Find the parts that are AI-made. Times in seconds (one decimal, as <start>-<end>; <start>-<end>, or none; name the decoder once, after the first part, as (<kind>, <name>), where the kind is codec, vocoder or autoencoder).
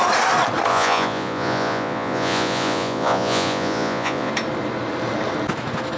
0.7-4.3 (vocoder, Vocos)